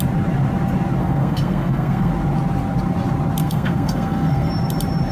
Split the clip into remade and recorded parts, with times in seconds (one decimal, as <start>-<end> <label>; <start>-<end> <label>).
0.0-1.0 recorded; 1.0-2.1 remade; 2.1-3.4 recorded; 3.4-4.5 remade; 4.5-5.1 recorded